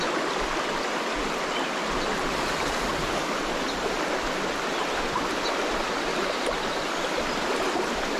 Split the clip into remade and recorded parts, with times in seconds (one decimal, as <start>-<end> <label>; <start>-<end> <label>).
0.0-6.1 recorded; 6.1-6.9 remade; 6.9-8.2 recorded